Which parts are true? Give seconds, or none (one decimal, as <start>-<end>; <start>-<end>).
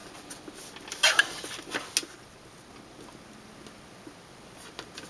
0.0-5.1